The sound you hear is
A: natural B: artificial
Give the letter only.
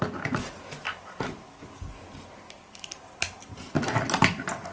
A